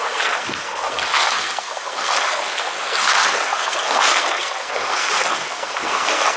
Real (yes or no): no